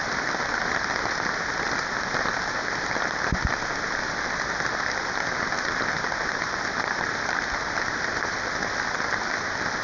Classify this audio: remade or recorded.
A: recorded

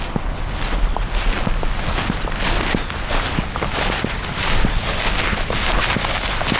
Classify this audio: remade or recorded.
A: recorded